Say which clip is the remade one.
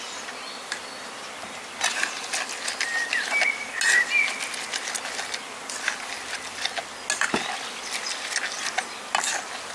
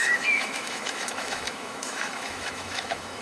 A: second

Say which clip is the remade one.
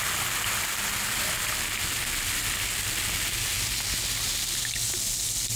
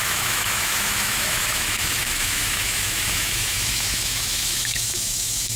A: second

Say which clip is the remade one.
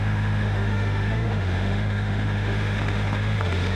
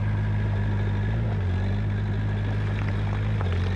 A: first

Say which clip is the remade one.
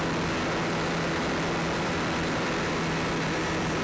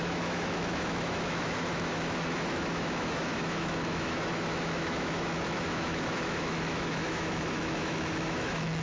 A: second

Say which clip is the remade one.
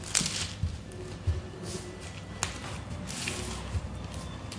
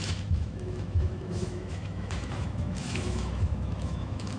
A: second